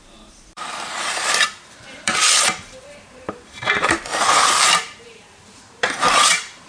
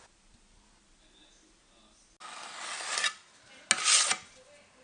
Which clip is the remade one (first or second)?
first